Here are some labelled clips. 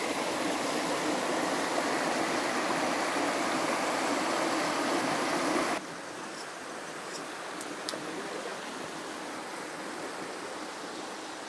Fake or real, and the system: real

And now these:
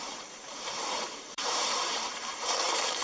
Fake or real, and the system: fake, vocoder, BigVGAN v2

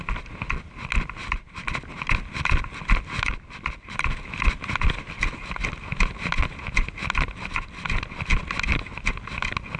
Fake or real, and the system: real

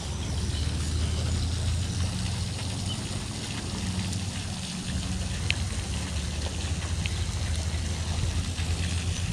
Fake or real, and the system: real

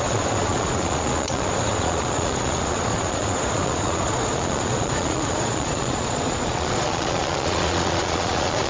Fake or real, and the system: fake, vocoder, Vocos